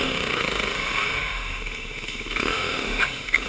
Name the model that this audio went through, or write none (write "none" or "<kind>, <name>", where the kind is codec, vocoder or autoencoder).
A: autoencoder, DAC-VAE